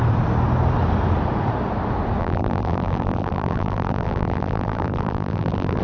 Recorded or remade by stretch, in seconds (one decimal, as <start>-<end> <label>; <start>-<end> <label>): 0.0-2.2 recorded; 2.2-5.8 remade